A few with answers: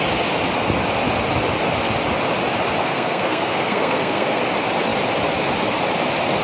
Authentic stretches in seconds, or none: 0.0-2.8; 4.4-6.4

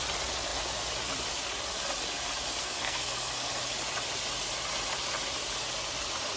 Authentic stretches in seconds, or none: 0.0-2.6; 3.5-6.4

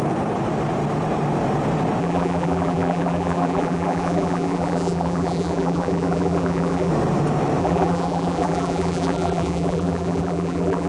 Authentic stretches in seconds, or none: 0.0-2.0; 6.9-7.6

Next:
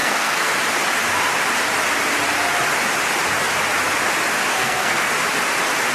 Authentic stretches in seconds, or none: 0.5-4.5; 5.1-5.9